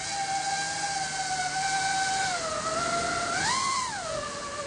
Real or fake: real